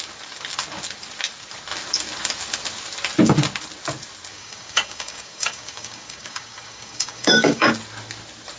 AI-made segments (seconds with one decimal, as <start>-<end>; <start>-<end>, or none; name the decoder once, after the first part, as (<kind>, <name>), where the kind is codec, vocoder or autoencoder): 4.3-7.7 (codec, DAC)